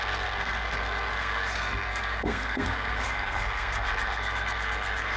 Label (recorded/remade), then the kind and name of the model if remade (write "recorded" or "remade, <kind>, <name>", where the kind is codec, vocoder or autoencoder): remade, codec, SNAC